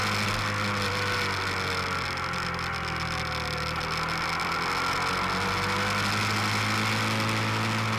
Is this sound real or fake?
real